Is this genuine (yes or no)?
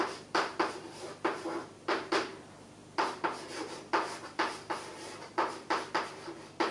no